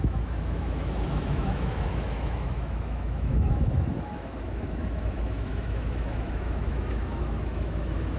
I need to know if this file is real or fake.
fake